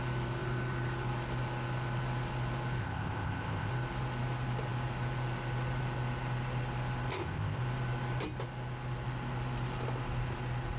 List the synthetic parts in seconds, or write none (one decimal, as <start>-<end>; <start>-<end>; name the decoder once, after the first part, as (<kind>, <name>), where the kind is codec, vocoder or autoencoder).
2.8-3.7 (codec, ZipCodec); 7.1-7.6